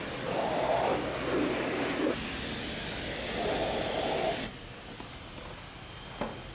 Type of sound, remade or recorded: recorded